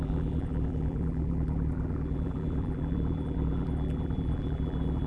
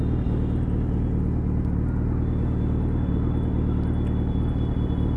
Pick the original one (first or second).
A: second